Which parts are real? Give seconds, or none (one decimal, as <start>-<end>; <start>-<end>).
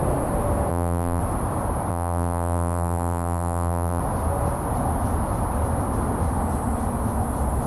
0.0-0.7; 1.2-1.9; 4.0-7.7